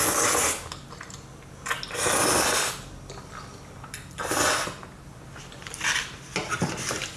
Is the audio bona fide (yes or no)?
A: yes